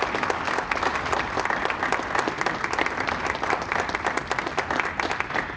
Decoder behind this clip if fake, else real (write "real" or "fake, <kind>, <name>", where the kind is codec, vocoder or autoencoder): real